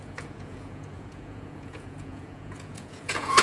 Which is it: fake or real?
fake